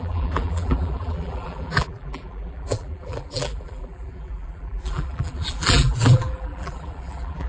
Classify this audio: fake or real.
fake